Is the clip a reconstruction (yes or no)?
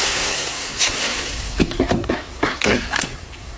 yes